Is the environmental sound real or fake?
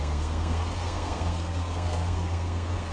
fake